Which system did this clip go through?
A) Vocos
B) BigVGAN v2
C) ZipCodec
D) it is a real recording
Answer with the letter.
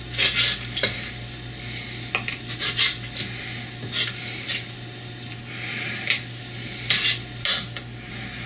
D